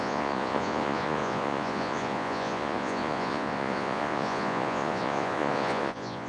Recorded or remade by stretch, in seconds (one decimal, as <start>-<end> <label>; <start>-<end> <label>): 0.0-6.3 remade